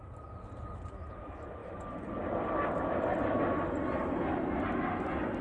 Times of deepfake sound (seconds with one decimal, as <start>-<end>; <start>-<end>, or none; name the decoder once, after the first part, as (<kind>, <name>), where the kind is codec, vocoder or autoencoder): none